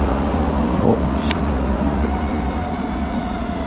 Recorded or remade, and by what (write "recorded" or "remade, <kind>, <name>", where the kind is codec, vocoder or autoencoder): remade, vocoder, Vocos